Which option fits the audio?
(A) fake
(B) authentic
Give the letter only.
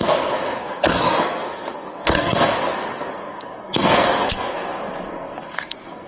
A